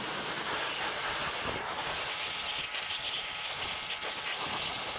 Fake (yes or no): no